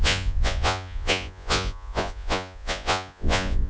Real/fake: fake